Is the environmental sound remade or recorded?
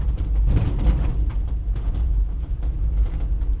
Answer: remade